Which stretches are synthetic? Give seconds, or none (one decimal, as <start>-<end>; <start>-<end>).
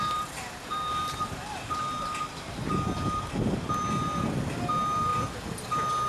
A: none